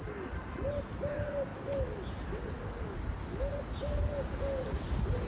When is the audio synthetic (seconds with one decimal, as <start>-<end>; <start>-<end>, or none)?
none